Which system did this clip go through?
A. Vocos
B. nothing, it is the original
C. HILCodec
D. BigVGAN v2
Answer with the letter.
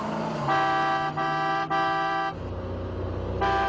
B